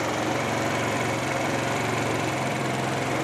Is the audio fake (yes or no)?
yes